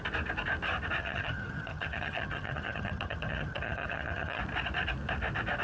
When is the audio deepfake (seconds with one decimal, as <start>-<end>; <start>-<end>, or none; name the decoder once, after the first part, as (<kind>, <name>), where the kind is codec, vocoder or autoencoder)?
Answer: 1.0-4.4 (vocoder, HiFi-GAN)